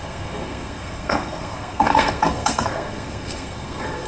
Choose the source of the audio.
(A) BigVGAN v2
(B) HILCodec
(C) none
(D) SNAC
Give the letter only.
D